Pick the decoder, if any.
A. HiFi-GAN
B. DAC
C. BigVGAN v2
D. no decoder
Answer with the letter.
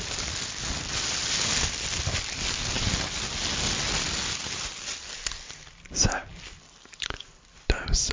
D